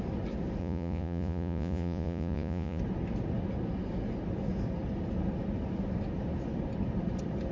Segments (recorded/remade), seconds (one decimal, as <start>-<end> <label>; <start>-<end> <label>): 0.0-0.6 recorded; 0.6-2.8 remade; 2.8-7.5 recorded